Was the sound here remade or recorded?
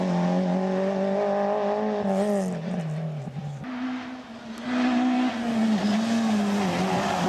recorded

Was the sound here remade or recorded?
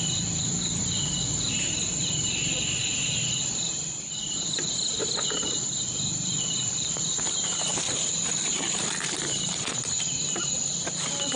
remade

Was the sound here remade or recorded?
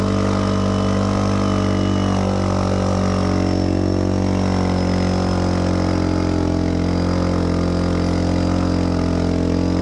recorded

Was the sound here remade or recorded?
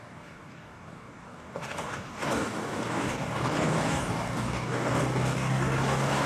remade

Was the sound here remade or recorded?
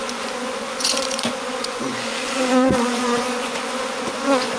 remade